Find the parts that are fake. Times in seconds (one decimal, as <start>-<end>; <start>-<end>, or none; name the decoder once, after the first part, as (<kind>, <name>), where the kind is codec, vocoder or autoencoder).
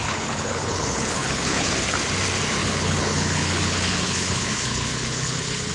0.0-1.7 (codec, HILCodec); 2.6-5.7